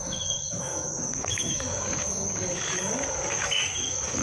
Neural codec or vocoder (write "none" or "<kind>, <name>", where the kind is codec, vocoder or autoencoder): codec, DAC